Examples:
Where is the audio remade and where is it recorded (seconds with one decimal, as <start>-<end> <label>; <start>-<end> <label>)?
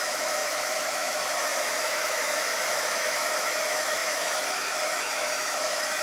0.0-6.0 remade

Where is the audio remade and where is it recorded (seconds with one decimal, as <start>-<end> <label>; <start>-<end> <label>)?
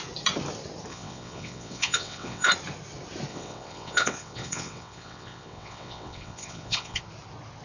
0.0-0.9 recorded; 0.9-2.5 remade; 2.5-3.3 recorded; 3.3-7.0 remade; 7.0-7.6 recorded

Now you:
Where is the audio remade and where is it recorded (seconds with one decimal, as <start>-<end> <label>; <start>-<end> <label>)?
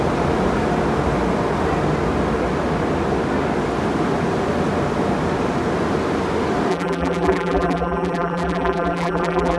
0.0-6.7 recorded; 6.7-9.6 remade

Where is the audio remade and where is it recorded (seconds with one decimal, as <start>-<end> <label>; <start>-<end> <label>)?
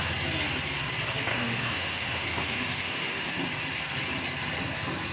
0.0-1.3 recorded; 1.3-3.3 remade; 3.3-5.1 recorded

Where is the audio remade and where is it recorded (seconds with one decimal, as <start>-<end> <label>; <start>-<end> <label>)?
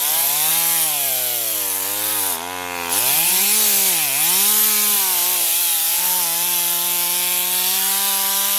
0.0-8.6 recorded